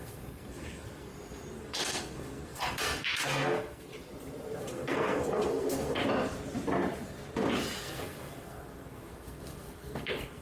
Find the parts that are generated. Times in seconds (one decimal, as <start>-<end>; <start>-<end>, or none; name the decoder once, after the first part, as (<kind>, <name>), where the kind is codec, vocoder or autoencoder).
0.0-1.1 (codec, SNAC); 1.6-3.9; 4.6-6.0; 7.8-10.4